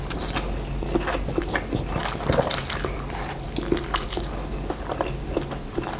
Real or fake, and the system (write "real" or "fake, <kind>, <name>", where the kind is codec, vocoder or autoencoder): real